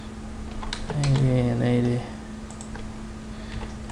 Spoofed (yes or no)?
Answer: no